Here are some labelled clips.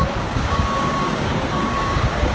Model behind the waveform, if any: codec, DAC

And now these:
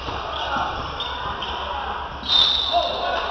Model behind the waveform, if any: none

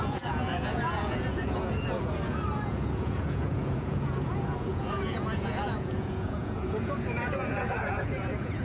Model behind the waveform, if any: vocoder, Vocos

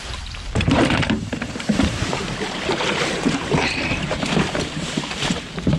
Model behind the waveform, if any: vocoder, BigVGAN v2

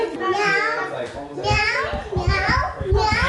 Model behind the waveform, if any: none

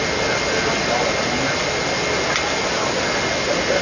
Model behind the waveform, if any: none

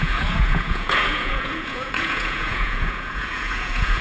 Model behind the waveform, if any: vocoder, Vocos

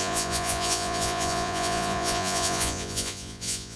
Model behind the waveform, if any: vocoder, Vocos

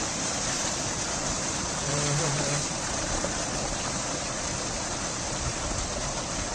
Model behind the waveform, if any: vocoder, BigVGAN v2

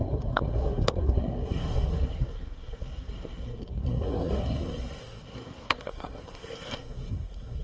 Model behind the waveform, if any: codec, SNAC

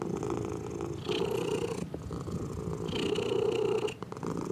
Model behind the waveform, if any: none